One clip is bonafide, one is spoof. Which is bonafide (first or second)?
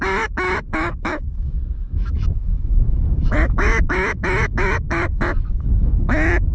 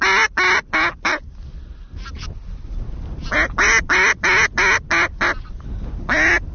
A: second